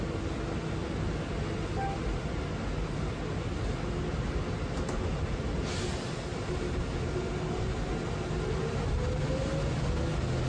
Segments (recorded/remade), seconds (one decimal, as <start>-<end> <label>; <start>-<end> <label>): 0.0-10.5 recorded